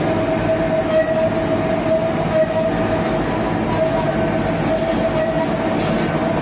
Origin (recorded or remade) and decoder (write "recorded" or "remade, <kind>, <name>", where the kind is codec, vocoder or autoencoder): recorded